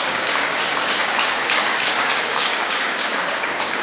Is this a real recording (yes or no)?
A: no